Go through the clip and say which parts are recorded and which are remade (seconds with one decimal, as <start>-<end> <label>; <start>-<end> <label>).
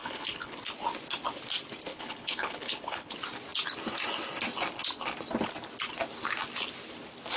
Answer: 0.0-0.6 remade; 0.6-1.9 recorded; 1.9-3.1 remade; 3.1-7.4 recorded